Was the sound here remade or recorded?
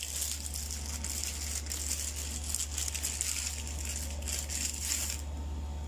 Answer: recorded